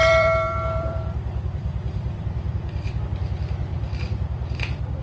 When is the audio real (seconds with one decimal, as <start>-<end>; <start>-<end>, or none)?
3.0-3.7